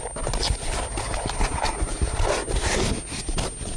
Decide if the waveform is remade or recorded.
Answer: recorded